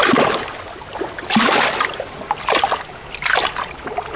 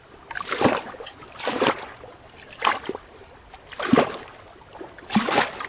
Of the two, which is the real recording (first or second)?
first